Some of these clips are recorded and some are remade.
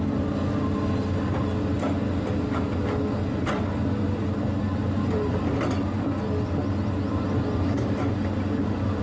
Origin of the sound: recorded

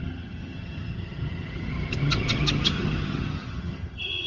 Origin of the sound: remade